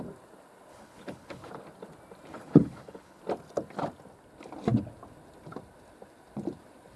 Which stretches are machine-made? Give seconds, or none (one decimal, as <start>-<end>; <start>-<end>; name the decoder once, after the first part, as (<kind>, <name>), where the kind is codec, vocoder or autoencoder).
0.7-1.5 (codec, HILCodec); 2.3-3.2